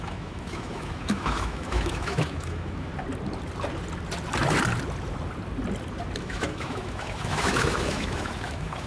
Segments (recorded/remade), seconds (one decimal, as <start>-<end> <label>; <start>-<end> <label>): 0.0-2.9 remade; 2.9-6.2 recorded; 6.2-8.9 remade